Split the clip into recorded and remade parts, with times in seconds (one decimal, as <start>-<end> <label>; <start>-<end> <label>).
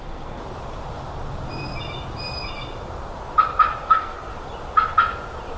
0.0-0.4 remade; 0.4-3.8 recorded; 3.8-4.3 remade; 4.3-5.6 recorded